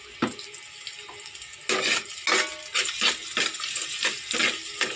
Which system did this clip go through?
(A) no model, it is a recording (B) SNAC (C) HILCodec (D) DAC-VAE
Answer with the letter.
A